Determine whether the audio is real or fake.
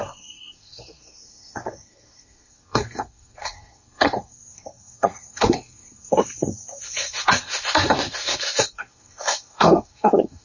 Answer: fake